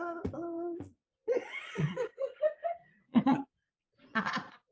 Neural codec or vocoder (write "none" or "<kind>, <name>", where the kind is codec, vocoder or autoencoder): vocoder, Vocos